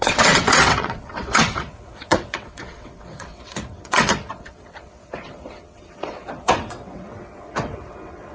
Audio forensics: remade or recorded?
remade